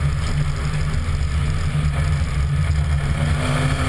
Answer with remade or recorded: recorded